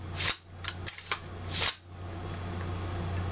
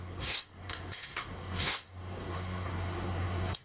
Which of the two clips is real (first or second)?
first